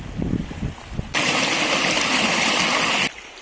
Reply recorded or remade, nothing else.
recorded